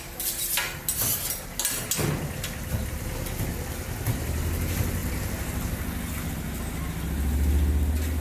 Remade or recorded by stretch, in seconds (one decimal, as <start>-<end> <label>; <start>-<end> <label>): 0.0-8.2 recorded